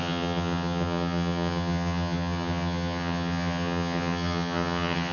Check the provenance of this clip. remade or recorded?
remade